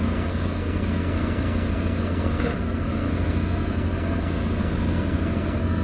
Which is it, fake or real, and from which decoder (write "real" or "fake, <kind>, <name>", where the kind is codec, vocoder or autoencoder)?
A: fake, codec, SNAC